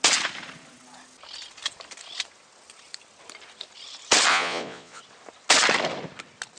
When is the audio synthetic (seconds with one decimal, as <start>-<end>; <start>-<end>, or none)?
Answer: 4.3-5.0